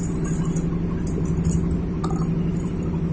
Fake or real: real